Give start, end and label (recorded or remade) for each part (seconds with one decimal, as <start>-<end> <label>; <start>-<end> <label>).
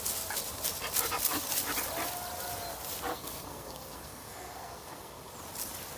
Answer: 0.0-3.1 recorded; 3.1-5.3 remade; 5.3-6.0 recorded